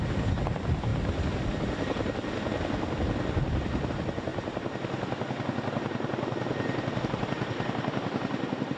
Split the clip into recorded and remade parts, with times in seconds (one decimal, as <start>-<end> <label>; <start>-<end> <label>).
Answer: 0.0-0.9 remade; 0.9-3.9 recorded; 3.9-4.3 remade; 4.3-7.0 recorded; 7.0-8.8 remade